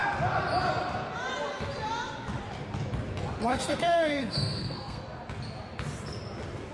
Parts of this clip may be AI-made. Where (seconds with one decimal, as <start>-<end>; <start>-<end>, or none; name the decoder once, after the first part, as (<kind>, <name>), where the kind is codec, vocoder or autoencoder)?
3.5-5.0 (codec, SNAC)